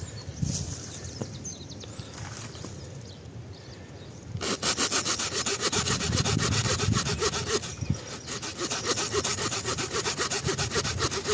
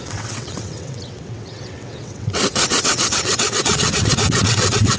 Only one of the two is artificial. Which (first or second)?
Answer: second